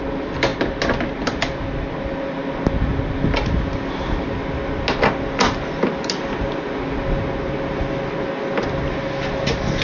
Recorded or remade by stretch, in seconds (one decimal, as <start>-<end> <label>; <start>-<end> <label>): 0.0-9.8 recorded